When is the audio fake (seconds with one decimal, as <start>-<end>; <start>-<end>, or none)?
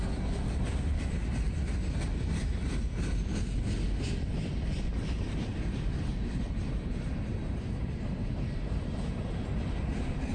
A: 4.9-9.0